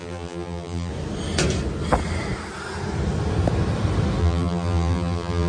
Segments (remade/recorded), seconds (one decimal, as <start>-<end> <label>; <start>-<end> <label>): 0.0-0.9 remade; 0.9-4.2 recorded; 4.2-5.5 remade